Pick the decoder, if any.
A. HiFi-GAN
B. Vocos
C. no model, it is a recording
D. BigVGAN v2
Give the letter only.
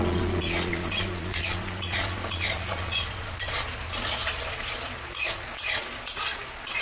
B